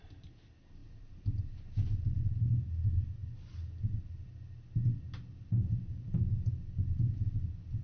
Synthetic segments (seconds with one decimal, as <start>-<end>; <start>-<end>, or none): 0.8-1.4